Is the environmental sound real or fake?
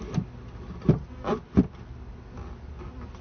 real